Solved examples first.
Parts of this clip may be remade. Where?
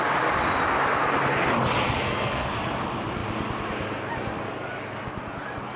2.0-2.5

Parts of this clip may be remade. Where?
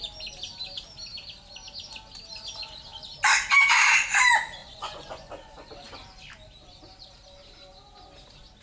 4.6-5.7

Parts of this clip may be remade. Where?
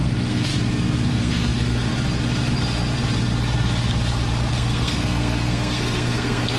0.0-0.5; 1.1-1.9; 4.5-6.6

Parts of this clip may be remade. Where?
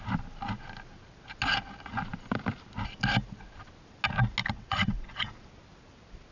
4.4-5.3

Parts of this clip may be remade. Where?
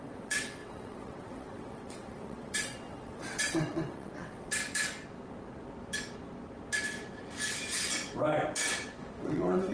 0.0-4.6; 9.2-9.7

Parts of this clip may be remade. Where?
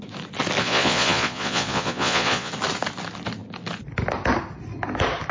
0.6-2.5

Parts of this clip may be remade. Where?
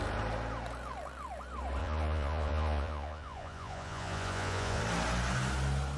1.8-4.8